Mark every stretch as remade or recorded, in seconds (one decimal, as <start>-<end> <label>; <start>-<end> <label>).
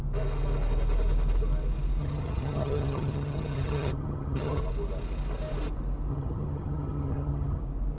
0.0-2.0 recorded; 2.0-4.6 remade; 4.6-6.1 recorded; 6.1-7.6 remade; 7.6-8.0 recorded